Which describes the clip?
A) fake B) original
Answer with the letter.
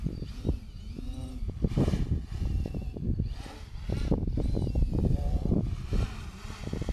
B